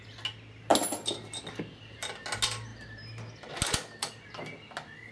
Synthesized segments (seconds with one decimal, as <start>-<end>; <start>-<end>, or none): none